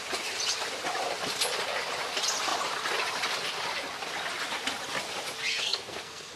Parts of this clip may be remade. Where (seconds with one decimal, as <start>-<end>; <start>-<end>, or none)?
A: 5.5-6.4